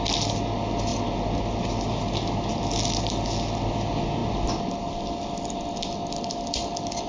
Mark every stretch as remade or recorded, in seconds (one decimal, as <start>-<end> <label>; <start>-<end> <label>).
0.0-7.1 recorded

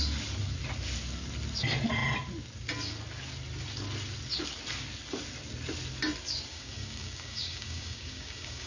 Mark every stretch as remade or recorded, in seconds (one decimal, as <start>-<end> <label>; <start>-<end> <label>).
0.0-6.5 recorded; 6.5-8.7 remade

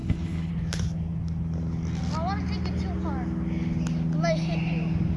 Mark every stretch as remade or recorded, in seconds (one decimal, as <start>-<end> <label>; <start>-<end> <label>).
0.0-0.5 remade; 0.5-5.2 recorded

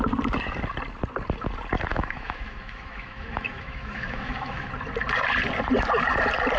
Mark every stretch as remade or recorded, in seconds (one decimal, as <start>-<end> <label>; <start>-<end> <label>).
0.0-1.9 recorded; 1.9-4.7 remade; 4.7-6.6 recorded

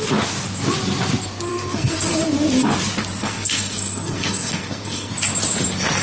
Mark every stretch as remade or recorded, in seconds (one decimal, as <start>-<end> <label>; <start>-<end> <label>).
0.0-1.5 recorded; 1.5-2.2 remade; 2.2-3.2 recorded; 3.2-5.1 remade; 5.1-6.0 recorded